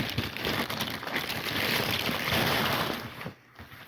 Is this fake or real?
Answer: fake